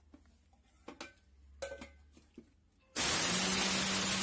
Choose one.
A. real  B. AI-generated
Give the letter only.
A